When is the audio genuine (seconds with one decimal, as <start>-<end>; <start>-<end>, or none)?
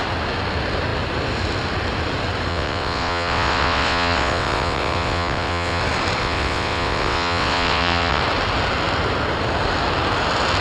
0.0-2.5; 5.8-6.2; 8.2-10.6